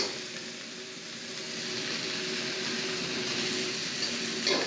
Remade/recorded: recorded